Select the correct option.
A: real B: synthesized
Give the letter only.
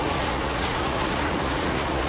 B